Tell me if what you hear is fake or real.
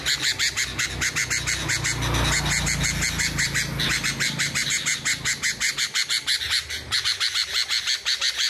real